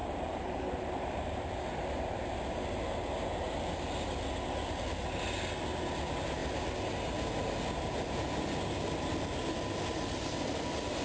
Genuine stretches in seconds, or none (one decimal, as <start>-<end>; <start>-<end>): 1.4-11.0